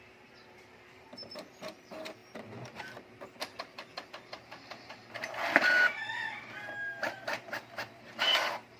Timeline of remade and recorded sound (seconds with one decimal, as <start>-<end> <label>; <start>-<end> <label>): 0.0-5.0 remade; 5.0-8.0 recorded; 8.0-8.8 remade